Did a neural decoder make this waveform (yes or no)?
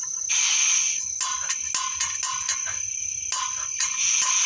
no